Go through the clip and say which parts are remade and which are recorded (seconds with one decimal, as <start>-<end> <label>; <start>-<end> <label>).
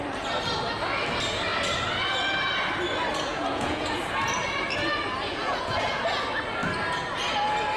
0.0-3.3 recorded; 3.3-4.0 remade; 4.0-5.3 recorded; 5.3-6.1 remade; 6.1-7.8 recorded